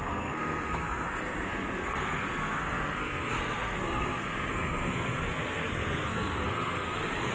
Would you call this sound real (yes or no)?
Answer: no